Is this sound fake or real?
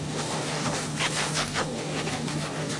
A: fake